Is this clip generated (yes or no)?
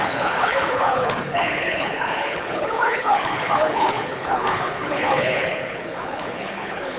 yes